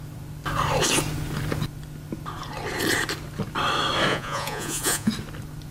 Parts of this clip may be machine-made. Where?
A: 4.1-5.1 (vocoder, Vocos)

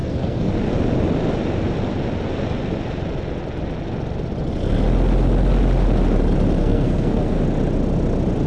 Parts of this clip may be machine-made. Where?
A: 0.0-0.5 (codec, SNAC); 6.6-7.4